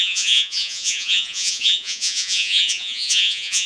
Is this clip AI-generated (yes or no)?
yes